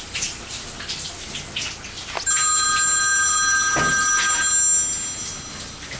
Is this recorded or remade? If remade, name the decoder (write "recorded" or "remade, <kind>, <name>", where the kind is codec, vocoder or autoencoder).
recorded